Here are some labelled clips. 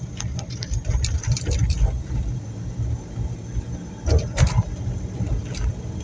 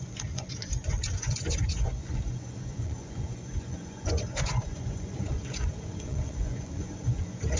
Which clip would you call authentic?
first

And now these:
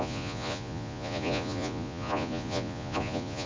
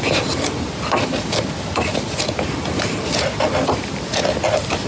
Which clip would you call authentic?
second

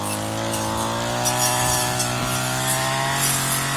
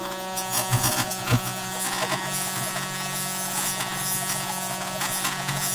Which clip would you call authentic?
first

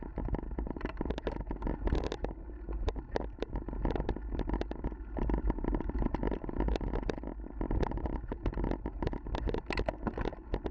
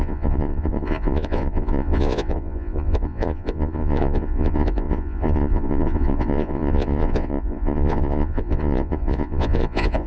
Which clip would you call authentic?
first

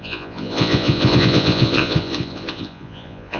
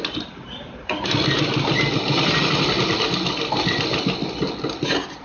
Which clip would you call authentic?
second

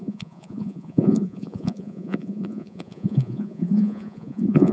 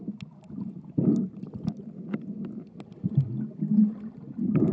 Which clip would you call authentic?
second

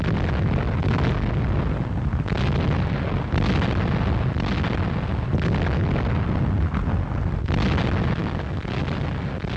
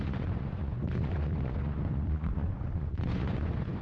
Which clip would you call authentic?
first